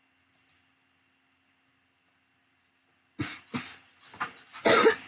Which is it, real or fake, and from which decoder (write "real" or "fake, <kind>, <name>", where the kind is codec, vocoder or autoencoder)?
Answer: real